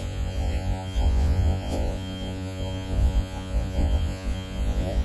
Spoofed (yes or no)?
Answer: yes